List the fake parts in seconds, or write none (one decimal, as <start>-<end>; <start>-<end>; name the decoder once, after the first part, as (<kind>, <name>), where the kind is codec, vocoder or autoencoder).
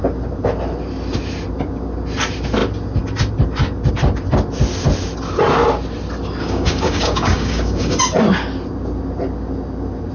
6.4-8.0 (codec, DAC)